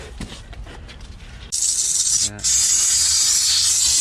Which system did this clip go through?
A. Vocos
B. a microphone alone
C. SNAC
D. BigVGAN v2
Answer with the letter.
B